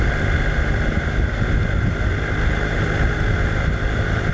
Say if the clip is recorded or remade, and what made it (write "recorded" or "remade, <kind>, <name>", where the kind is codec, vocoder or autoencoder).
recorded